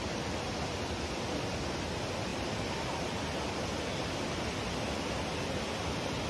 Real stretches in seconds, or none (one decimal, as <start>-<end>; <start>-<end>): 0.0-6.3